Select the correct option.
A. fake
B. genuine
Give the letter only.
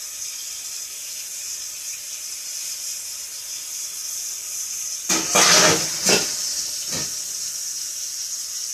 B